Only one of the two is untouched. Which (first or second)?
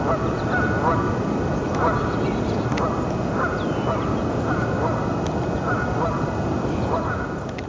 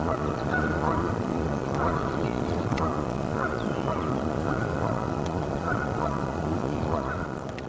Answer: first